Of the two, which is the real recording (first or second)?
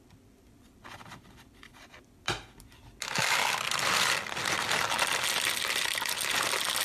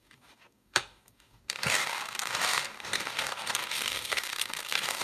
first